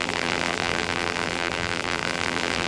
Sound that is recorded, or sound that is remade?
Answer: remade